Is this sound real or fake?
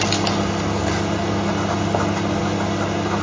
real